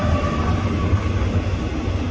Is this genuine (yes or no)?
yes